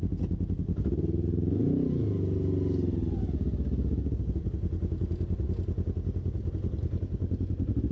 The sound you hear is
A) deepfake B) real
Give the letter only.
B